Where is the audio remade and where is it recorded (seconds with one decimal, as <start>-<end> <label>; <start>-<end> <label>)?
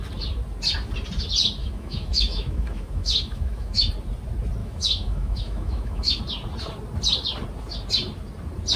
0.0-1.6 recorded; 1.6-3.9 remade; 3.9-4.6 recorded; 4.6-6.2 remade; 6.2-8.8 recorded